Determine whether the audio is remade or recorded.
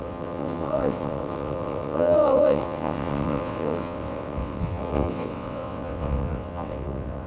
remade